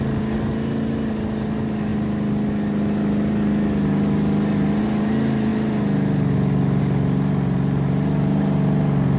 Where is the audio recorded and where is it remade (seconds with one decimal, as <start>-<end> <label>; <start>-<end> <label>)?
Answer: 0.0-9.2 recorded